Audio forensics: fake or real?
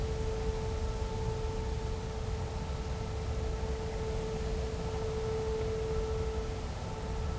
real